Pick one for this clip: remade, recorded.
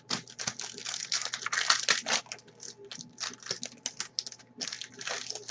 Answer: recorded